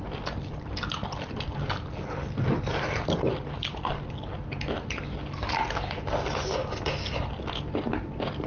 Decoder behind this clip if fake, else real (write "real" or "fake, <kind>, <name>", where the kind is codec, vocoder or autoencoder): real